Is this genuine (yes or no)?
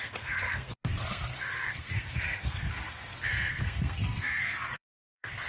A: no